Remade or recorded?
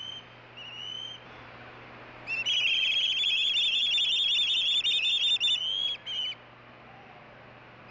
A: recorded